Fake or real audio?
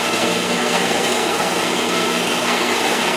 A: fake